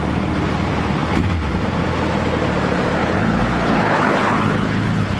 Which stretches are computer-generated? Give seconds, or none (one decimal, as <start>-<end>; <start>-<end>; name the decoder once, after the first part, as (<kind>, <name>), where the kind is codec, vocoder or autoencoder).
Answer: 3.0-5.2 (codec, HILCodec)